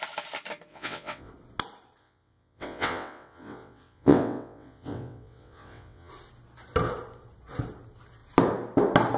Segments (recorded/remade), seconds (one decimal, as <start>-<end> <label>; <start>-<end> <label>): 0.0-0.7 recorded; 0.7-1.3 remade; 1.3-2.0 recorded; 2.0-6.1 remade; 6.1-9.2 recorded